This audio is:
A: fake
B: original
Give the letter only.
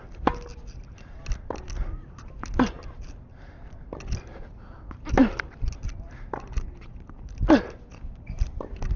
B